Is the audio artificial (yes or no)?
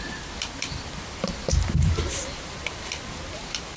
yes